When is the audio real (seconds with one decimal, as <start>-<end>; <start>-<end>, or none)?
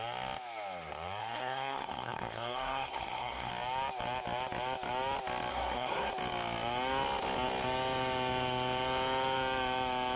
0.0-1.2; 3.5-5.5; 6.1-10.2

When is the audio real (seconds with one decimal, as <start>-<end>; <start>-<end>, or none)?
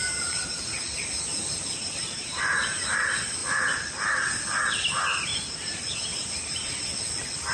0.0-1.3; 2.4-5.3; 6.7-7.5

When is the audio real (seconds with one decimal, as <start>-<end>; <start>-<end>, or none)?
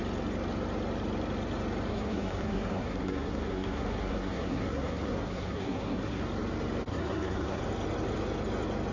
0.0-1.9; 6.2-6.9; 7.6-8.9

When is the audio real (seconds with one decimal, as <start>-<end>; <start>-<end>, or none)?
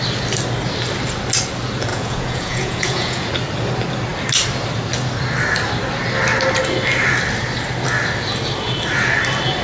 0.0-1.9; 3.3-9.6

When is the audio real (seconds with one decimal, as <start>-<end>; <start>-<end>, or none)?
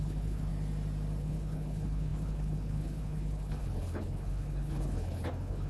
0.5-1.2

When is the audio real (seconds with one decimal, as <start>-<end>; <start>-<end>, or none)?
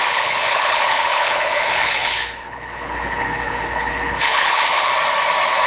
4.9-5.7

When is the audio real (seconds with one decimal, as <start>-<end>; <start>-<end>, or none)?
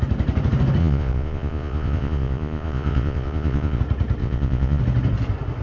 0.0-0.8; 3.8-4.2; 4.8-5.6